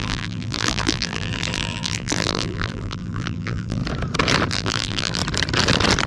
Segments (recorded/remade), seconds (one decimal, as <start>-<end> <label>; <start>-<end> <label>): 0.0-3.8 remade; 3.8-4.5 recorded; 4.5-5.2 remade; 5.2-6.1 recorded